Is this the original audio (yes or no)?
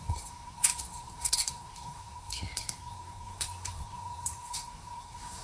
no